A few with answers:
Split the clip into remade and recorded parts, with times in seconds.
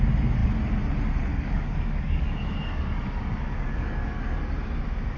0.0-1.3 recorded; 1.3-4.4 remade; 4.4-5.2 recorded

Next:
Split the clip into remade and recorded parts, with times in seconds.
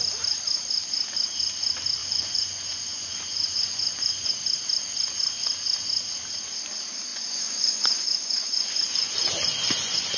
0.0-2.0 recorded; 2.0-4.3 remade; 4.3-7.1 recorded; 7.1-10.2 remade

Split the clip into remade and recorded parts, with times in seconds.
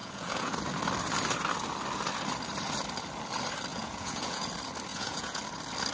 0.0-0.6 remade; 0.6-3.7 recorded; 3.7-4.5 remade; 4.5-4.9 recorded; 4.9-5.4 remade; 5.4-5.9 recorded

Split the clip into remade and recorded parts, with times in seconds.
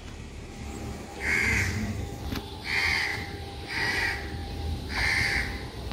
0.0-1.4 recorded; 1.4-2.0 remade; 2.0-3.1 recorded; 3.1-3.9 remade; 3.9-4.4 recorded; 4.4-4.9 remade; 4.9-5.9 recorded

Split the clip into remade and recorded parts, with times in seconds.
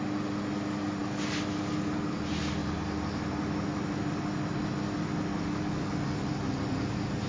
0.0-7.3 recorded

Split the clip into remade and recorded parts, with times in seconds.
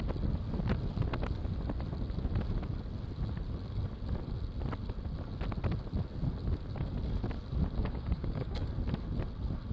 0.0-7.8 recorded; 7.8-8.7 remade; 8.7-9.7 recorded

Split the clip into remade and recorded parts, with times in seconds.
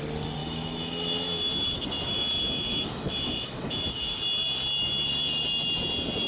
0.0-0.4 recorded; 0.4-4.2 remade; 4.2-6.3 recorded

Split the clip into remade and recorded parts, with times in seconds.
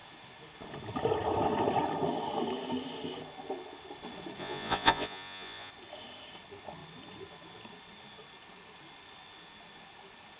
0.0-4.4 recorded; 4.4-5.7 remade; 5.7-10.4 recorded